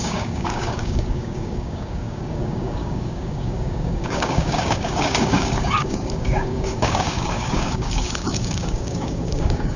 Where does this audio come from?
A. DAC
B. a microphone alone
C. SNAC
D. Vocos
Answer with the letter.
A